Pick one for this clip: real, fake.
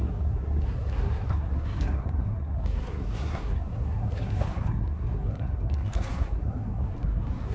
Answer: fake